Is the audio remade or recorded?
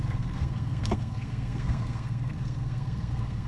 remade